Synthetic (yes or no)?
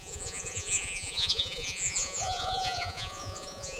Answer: yes